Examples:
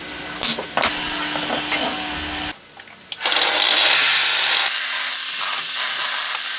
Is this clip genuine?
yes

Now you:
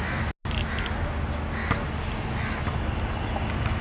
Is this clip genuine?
yes